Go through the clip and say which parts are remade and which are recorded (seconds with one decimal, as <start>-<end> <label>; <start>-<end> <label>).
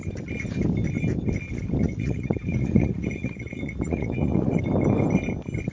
0.0-1.8 recorded; 1.8-4.6 remade; 4.6-5.7 recorded